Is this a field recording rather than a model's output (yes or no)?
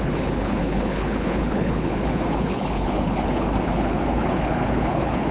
no